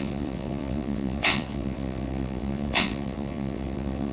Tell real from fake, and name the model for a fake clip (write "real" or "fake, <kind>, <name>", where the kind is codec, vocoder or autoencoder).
fake, vocoder, WaveNeXt